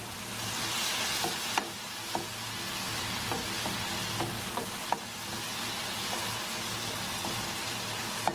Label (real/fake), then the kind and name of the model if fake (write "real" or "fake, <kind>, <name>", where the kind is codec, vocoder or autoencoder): real